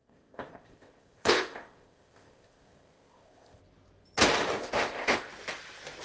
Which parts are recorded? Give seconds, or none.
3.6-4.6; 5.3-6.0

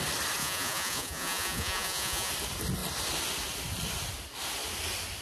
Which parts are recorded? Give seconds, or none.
0.0-0.4; 2.3-5.2

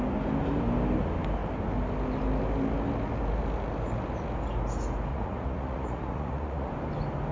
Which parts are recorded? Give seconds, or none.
0.0-5.1; 6.7-7.3

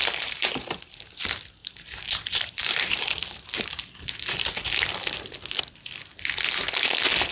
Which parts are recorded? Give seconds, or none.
0.6-1.6; 3.9-7.3

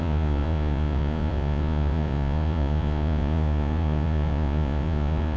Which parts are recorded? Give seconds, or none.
none

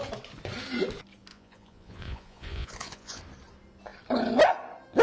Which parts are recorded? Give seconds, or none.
0.0-1.3; 3.2-5.0

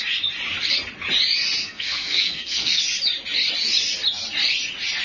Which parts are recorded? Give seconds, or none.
0.0-1.6; 2.8-5.0